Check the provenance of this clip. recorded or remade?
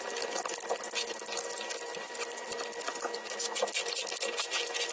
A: recorded